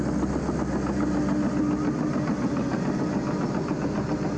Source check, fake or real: real